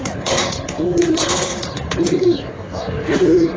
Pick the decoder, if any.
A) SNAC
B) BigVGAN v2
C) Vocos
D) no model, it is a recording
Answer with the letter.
A